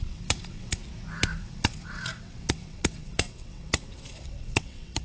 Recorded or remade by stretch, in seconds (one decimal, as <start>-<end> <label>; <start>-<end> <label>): 0.0-0.8 remade; 0.8-1.4 recorded; 1.4-5.0 remade